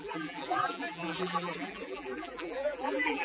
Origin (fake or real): fake